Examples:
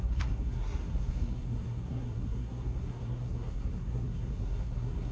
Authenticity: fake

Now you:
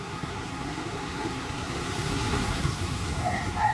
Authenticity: fake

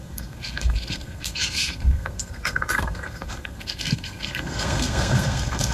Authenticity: fake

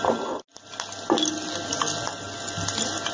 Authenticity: real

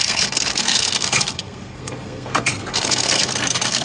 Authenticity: fake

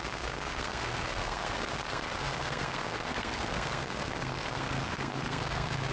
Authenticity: fake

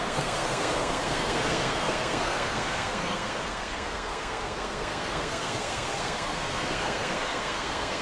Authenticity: fake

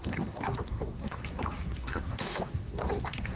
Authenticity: fake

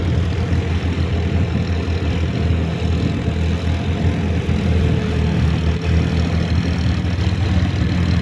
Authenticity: real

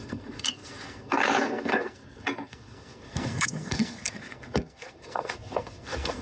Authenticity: fake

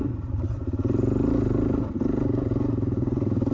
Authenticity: real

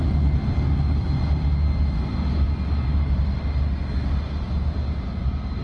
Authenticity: real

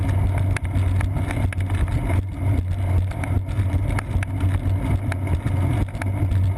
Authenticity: real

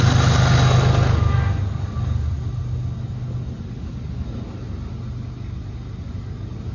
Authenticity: real